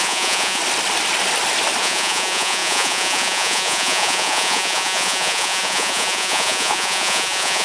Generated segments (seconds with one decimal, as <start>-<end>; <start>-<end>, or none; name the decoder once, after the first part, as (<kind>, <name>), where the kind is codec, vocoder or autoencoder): 0.0-0.6 (vocoder, Vocos); 1.8-7.6